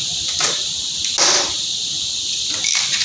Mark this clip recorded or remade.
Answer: recorded